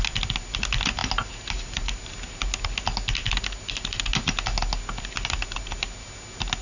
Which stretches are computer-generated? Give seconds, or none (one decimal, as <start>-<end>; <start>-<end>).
none